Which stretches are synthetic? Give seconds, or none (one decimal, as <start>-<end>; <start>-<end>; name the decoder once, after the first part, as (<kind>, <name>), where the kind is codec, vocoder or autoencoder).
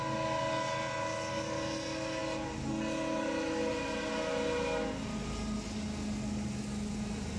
none